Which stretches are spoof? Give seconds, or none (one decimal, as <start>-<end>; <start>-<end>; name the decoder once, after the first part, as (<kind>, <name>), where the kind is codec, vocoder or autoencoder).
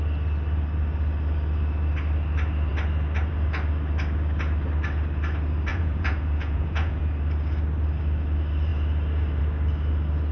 5.7-7.0 (vocoder, Vocos)